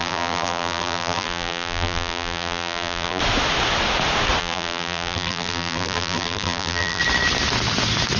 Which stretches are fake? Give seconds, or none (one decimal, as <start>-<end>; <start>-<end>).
0.0-3.2; 4.4-7.0